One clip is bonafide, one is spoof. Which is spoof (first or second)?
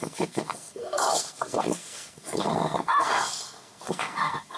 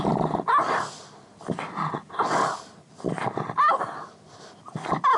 first